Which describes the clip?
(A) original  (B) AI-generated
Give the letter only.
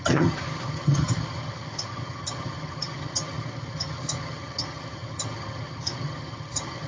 B